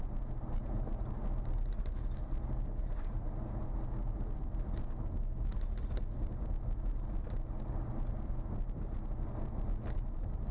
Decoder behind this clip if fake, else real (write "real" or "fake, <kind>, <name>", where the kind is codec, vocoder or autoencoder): real